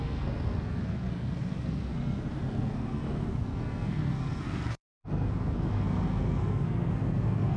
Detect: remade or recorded remade